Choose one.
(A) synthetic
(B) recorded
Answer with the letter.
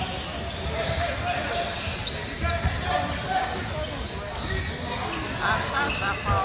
B